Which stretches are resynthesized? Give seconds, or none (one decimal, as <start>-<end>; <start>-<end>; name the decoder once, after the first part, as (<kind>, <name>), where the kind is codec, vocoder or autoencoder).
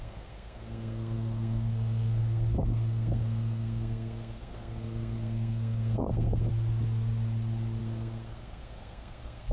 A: 0.0-6.5 (codec, SNAC); 7.8-9.5